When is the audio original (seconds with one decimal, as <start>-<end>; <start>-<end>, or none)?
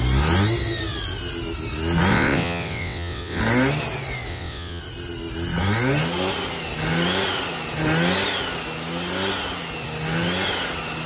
0.0-2.1; 3.4-4.3; 4.8-11.1